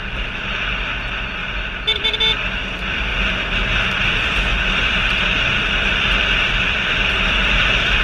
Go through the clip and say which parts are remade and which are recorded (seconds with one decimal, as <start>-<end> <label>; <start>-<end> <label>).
0.0-1.4 recorded; 1.4-2.2 remade; 2.2-4.5 recorded; 4.5-8.0 remade